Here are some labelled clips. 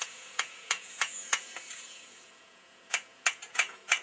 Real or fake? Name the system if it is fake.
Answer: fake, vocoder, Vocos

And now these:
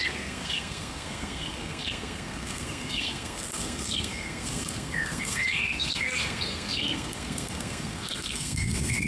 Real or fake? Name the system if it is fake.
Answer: fake, codec, SNAC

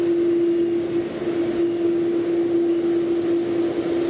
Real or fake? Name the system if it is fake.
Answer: real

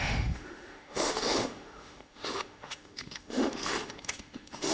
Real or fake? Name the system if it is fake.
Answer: fake, autoencoder, DAC-VAE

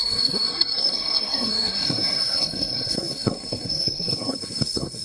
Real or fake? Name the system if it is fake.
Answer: fake, codec, SNAC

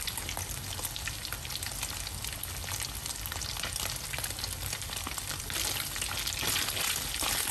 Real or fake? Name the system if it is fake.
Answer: real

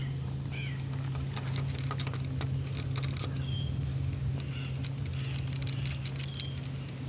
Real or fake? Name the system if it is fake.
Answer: real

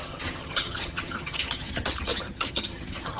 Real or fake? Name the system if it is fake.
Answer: fake, vocoder, HiFi-GAN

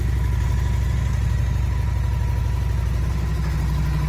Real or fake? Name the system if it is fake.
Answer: real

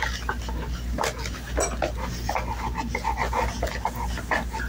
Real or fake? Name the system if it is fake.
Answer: real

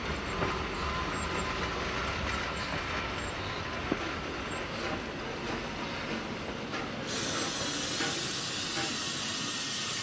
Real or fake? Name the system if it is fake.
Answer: real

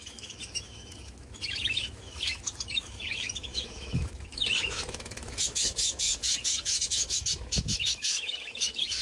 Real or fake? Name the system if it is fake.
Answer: fake, autoencoder, DAC-VAE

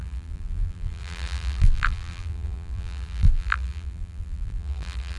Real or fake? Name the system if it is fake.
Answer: fake, vocoder, BigVGAN v2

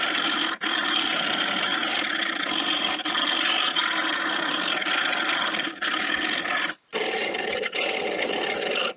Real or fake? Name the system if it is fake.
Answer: real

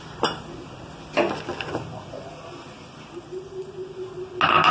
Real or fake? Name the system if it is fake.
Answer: real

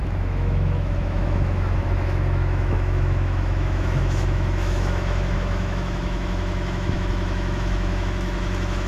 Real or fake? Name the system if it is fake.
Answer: fake, autoencoder, DAC-VAE